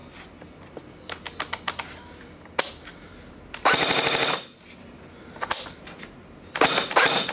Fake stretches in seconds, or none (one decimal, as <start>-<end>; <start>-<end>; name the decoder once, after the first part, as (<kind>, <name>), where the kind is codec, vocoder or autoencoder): none